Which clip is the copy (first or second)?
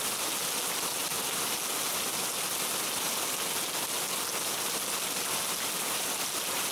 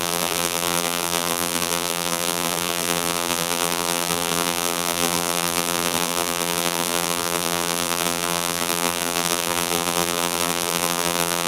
second